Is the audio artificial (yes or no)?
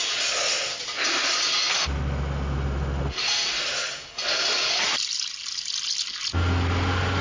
no